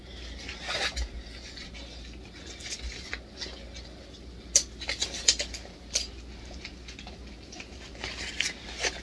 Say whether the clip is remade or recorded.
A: recorded